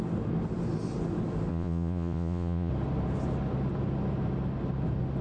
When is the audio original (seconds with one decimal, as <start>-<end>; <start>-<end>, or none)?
0.0-1.5; 2.7-5.2